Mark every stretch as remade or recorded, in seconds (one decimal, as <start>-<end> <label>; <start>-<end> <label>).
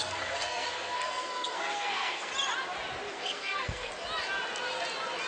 0.0-2.3 remade; 2.3-3.1 recorded; 3.1-3.9 remade; 3.9-5.3 recorded